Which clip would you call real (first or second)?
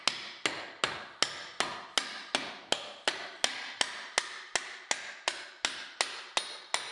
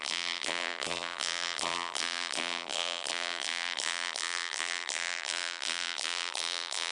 first